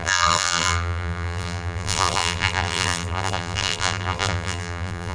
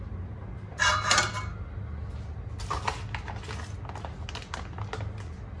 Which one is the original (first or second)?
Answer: second